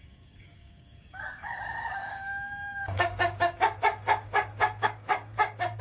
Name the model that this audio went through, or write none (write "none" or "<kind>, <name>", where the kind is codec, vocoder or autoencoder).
codec, DAC